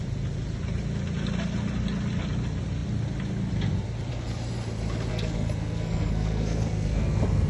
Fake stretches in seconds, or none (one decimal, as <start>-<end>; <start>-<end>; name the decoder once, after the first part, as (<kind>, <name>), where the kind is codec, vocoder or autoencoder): 5.1-7.5 (codec, SNAC)